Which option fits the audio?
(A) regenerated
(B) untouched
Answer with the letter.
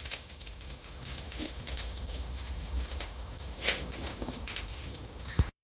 A